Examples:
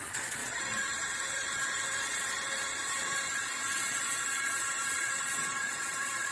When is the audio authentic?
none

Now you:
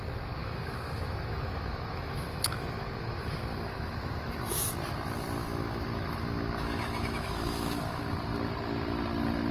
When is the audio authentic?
0.0-0.4; 4.7-5.4; 8.0-9.5

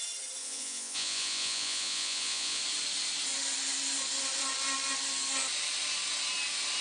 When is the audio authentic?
0.0-0.4; 2.6-6.8

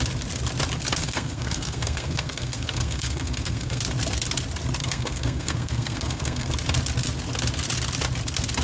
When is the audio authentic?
0.0-1.0; 3.8-4.8; 6.5-8.6

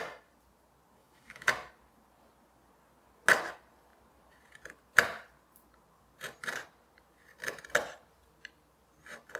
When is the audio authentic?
0.0-1.0; 1.5-9.4

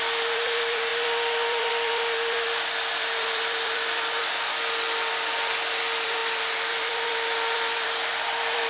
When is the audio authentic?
4.2-5.1

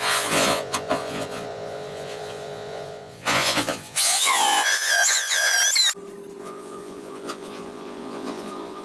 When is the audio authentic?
5.5-6.4

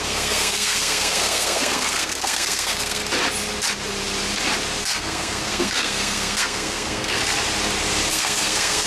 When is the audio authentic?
3.0-4.8; 7.2-8.1